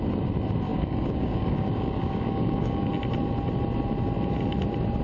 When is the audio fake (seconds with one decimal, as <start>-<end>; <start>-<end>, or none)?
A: 0.7-2.9